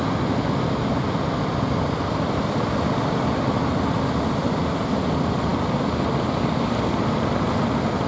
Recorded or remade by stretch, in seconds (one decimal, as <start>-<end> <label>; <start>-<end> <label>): 0.0-8.1 recorded